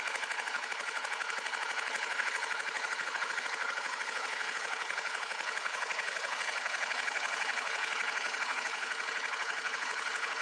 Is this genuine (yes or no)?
no